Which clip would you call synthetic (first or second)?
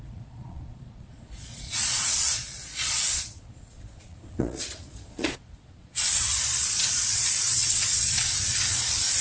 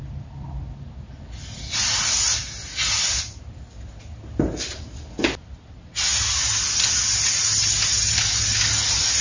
first